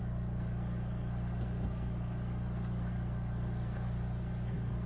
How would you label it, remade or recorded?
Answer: remade